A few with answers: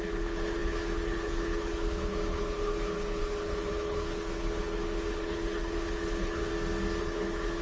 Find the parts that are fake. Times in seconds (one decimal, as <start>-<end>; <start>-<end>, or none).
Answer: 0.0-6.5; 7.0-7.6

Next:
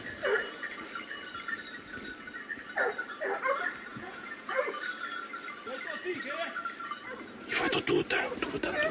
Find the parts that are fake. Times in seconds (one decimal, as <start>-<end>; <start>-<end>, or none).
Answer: 3.9-4.6

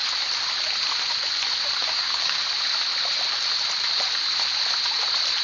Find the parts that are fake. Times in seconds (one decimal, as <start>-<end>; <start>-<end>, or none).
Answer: 1.8-2.4

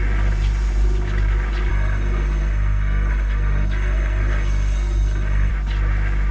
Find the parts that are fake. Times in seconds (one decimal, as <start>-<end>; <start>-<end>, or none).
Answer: 1.7-5.5

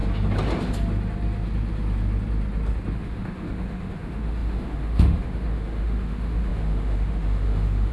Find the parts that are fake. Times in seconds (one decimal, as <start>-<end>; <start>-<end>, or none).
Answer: 2.9-7.9

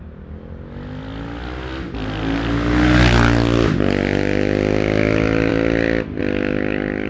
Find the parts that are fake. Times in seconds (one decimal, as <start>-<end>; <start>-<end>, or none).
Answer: none

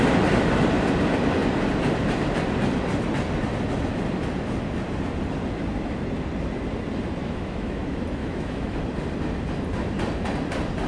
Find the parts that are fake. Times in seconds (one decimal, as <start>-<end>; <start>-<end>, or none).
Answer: 7.2-7.8; 8.2-8.8